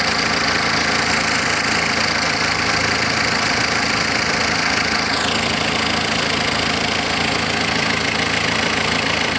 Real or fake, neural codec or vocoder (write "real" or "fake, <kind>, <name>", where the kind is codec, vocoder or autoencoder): real